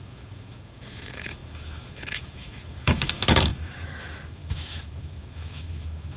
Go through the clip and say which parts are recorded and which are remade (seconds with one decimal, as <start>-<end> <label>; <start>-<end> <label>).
0.0-6.2 remade